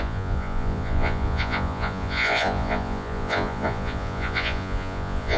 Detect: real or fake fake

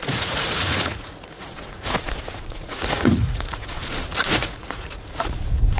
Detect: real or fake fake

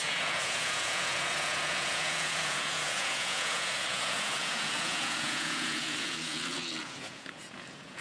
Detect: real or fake fake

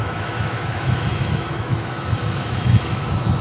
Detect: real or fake fake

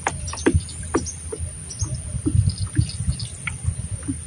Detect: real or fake real